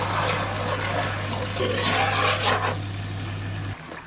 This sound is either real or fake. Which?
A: real